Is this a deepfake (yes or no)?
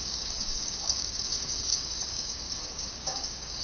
yes